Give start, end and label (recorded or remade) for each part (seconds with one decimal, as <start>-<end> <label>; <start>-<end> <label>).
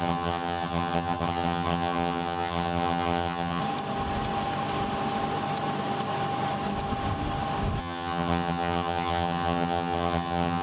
0.0-3.6 remade; 3.6-7.8 recorded; 7.8-10.6 remade